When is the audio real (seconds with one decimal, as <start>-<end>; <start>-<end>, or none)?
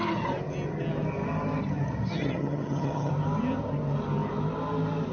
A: 0.0-2.1; 3.1-5.1